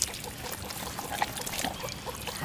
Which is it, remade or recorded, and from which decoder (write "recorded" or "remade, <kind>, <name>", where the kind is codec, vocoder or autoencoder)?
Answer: recorded